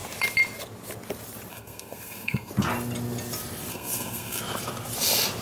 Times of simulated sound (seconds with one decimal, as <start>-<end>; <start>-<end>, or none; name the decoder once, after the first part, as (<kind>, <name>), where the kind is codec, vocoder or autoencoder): 1.5-2.5 (codec, SNAC); 3.7-4.4